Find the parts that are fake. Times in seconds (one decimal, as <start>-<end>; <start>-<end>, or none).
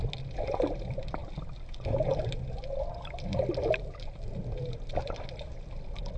none